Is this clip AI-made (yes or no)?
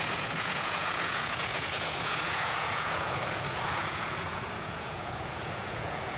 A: yes